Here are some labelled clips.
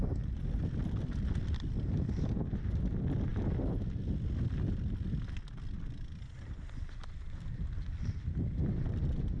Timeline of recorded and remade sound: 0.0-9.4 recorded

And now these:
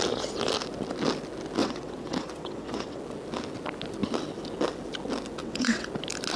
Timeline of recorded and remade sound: 0.0-1.6 recorded; 1.6-3.0 remade; 3.0-5.4 recorded; 5.4-5.9 remade; 5.9-6.4 recorded

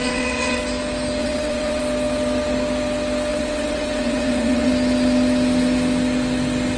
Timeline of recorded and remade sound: 0.0-0.6 remade; 0.6-1.2 recorded; 1.2-1.8 remade; 1.8-3.3 recorded; 3.3-4.7 remade; 4.7-6.8 recorded

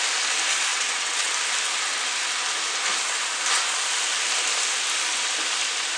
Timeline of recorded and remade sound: 0.0-0.7 recorded; 0.7-1.3 remade; 1.3-6.0 recorded

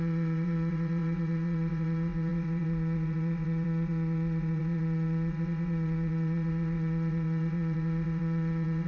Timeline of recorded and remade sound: 0.0-8.9 remade

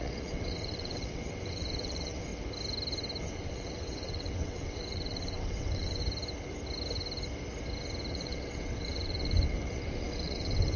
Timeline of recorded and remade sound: 0.0-2.3 remade; 2.3-3.2 recorded; 3.2-6.0 remade; 6.0-8.1 recorded; 8.1-10.8 remade

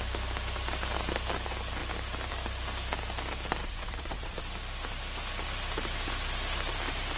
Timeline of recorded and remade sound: 0.0-3.6 recorded; 3.6-4.4 remade; 4.4-7.2 recorded